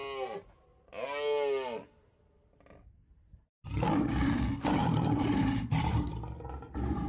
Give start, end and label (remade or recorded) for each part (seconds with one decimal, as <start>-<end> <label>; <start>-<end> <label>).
0.0-4.8 recorded; 4.8-6.1 remade; 6.1-7.1 recorded